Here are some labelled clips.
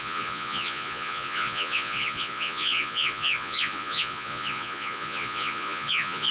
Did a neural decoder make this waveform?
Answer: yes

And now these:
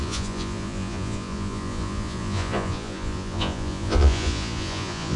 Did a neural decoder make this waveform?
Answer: yes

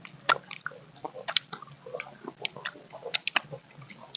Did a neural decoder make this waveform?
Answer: no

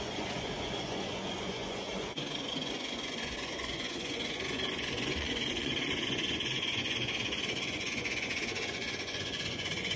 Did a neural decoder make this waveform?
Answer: yes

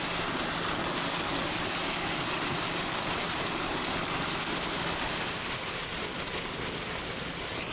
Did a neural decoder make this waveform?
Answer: no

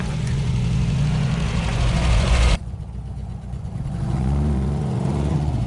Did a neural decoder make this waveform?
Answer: yes